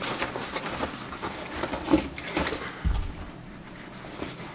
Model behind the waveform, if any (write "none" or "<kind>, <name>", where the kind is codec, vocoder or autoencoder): none